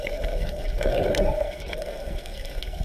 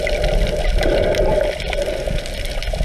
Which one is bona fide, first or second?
second